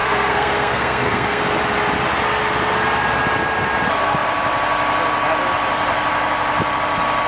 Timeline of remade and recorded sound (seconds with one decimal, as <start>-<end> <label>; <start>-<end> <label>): 0.0-1.4 remade; 1.4-7.3 recorded